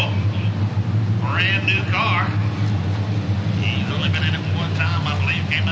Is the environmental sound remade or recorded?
recorded